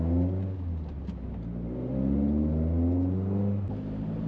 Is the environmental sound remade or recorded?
recorded